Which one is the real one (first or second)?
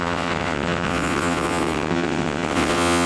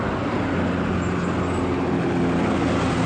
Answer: second